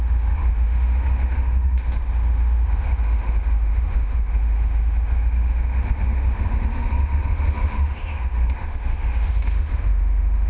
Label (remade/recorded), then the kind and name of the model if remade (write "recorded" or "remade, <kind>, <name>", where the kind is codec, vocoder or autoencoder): remade, autoencoder, DAC-VAE